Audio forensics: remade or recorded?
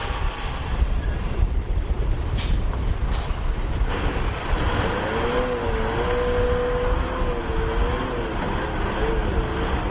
recorded